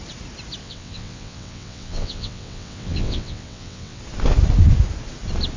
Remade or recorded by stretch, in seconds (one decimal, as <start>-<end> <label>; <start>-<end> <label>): 0.0-0.6 recorded; 0.6-4.0 remade; 4.0-5.6 recorded